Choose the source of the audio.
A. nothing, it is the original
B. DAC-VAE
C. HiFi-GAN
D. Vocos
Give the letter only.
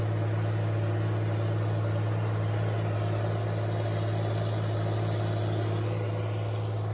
A